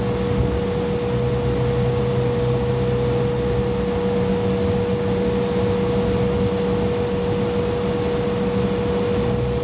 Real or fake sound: real